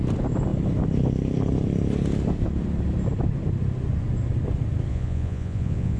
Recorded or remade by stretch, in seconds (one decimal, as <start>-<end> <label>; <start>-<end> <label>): 0.0-4.9 recorded; 4.9-6.0 remade